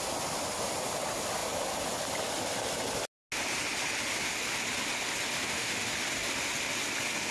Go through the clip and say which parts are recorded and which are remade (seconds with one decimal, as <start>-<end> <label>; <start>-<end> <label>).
0.0-5.4 recorded; 5.4-5.9 remade; 5.9-7.3 recorded